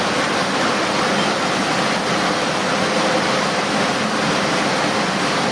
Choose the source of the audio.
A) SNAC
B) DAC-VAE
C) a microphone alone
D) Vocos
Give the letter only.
C